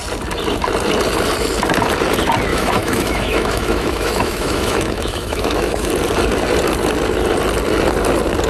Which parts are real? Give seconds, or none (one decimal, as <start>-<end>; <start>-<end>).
0.0-2.5; 5.9-8.5